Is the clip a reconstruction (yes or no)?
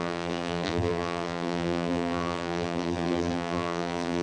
yes